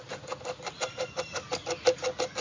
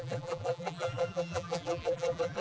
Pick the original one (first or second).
first